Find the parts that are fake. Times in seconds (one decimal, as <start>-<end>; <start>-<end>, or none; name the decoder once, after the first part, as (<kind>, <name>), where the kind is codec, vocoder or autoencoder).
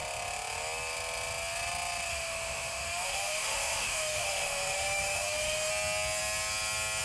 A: 2.1-5.7 (autoencoder, DAC-VAE)